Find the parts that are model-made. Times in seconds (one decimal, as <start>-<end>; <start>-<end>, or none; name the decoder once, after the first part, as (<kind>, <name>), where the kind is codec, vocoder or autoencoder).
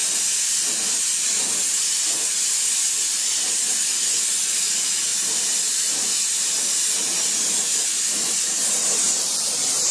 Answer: 5.1-9.5 (vocoder, BigVGAN v2)